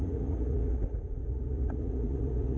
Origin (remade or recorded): remade